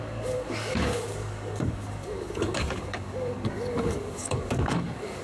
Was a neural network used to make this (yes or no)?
yes